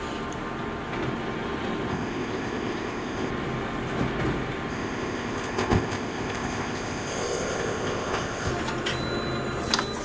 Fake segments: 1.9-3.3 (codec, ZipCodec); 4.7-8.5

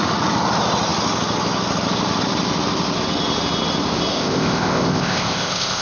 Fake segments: 4.1-5.8 (codec, ZipCodec)